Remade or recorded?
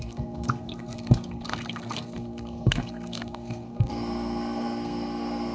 remade